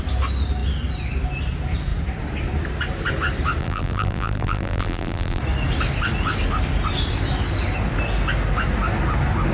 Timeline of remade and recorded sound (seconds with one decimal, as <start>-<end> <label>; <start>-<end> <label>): 0.0-3.6 recorded; 3.6-5.4 remade; 5.4-9.5 recorded